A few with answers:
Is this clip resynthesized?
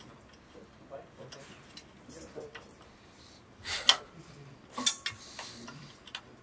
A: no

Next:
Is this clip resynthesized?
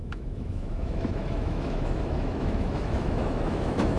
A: yes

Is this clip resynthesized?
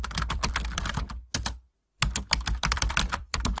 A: yes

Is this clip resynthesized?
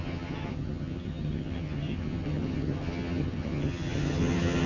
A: yes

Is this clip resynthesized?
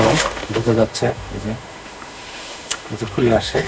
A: yes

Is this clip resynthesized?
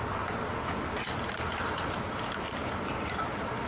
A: no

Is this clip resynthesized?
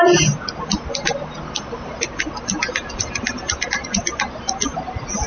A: no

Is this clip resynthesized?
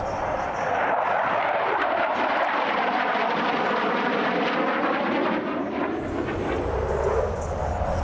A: no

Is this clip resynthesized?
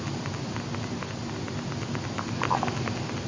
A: no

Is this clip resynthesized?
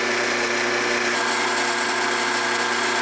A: no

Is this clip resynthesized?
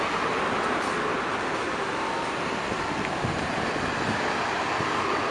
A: no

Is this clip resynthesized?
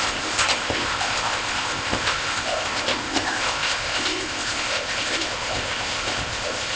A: yes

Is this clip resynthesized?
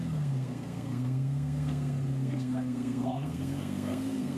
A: yes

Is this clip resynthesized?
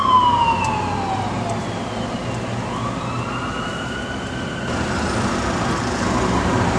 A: no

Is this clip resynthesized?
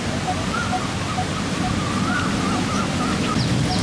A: no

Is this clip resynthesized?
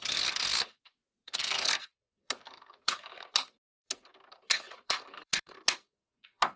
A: yes